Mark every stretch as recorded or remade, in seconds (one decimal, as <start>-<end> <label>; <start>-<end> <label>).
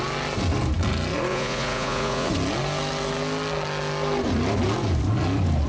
0.0-1.3 recorded; 1.3-2.3 remade; 2.3-5.7 recorded